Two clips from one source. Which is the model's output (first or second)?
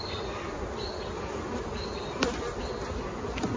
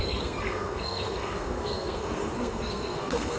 second